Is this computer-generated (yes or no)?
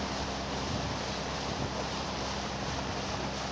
no